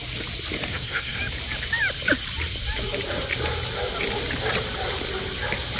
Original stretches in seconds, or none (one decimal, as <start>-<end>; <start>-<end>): 0.0-0.7; 1.2-5.8